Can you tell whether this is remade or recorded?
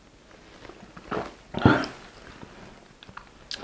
recorded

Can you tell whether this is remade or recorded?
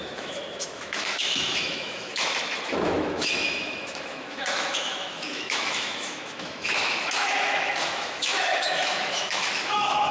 remade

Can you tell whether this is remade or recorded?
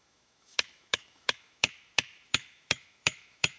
remade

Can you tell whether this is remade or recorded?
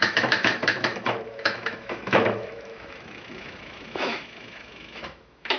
remade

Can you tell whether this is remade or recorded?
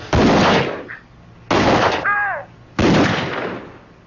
recorded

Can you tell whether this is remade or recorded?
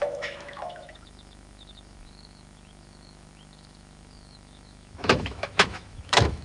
remade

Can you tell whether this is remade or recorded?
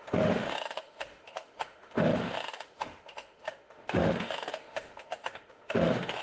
remade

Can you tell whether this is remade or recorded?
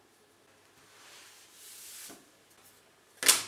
recorded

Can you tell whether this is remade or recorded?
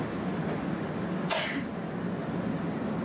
recorded